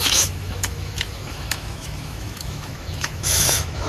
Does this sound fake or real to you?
fake